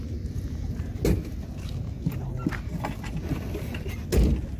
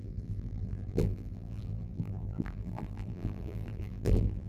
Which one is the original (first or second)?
first